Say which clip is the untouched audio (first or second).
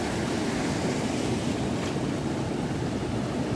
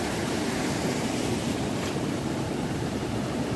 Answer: first